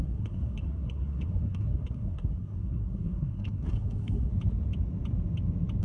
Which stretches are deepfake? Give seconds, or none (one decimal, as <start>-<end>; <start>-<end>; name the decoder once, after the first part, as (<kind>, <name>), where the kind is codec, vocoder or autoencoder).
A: 0.0-4.3 (codec, SNAC)